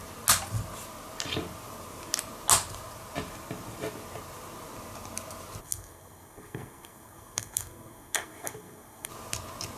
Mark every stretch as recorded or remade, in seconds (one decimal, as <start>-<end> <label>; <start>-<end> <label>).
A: 0.0-5.6 recorded; 5.6-9.1 remade; 9.1-9.8 recorded